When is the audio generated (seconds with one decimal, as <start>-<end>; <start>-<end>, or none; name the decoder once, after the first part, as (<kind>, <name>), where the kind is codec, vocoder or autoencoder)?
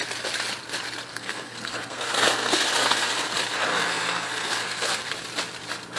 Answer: 1.1-3.1 (codec, SNAC); 3.7-5.1